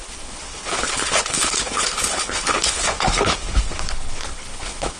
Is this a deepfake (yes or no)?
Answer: yes